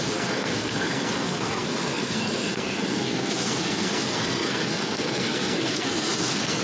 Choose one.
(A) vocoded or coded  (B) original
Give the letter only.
A